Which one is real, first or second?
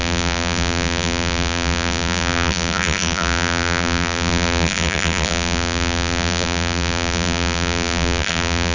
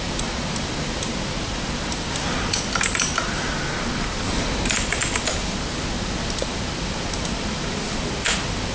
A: second